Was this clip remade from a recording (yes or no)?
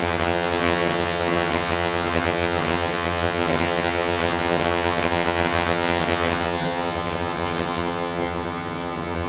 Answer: yes